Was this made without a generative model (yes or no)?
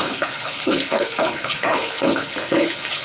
no